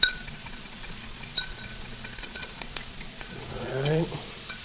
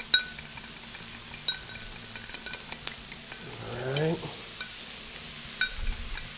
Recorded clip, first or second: second